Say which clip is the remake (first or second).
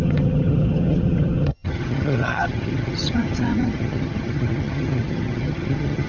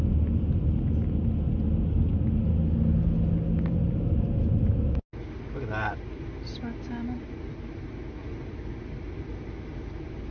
first